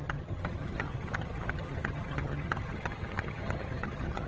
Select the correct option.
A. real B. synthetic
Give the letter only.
B